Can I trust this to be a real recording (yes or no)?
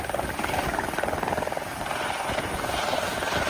yes